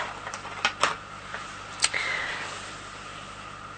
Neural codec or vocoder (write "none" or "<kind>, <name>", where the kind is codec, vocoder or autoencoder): none